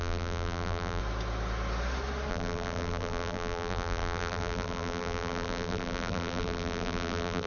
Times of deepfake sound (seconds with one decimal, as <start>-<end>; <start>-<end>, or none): 0.0-1.0; 2.3-7.5

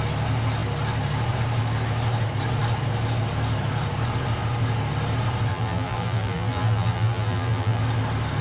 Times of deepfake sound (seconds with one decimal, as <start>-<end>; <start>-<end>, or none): 5.5-7.8

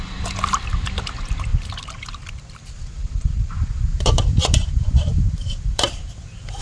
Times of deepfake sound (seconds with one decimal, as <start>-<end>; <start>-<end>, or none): 1.5-2.1; 3.9-6.6

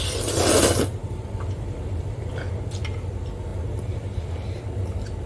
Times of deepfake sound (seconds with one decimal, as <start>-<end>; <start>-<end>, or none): 1.0-2.3; 3.5-4.3